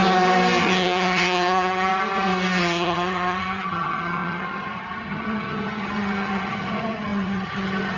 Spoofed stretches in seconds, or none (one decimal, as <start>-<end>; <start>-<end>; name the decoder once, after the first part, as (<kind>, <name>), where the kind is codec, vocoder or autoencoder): 0.6-1.9 (vocoder, HiFi-GAN); 2.6-8.0